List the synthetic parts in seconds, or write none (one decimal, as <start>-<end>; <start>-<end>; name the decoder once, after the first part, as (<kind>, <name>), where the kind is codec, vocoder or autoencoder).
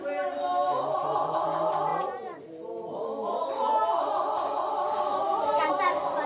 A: none